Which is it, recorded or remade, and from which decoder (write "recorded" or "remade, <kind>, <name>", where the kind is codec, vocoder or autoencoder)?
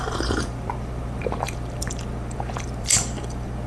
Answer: remade, vocoder, BigVGAN v2